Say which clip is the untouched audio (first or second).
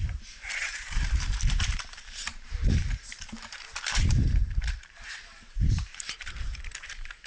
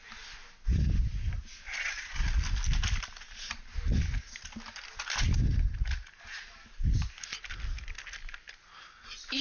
second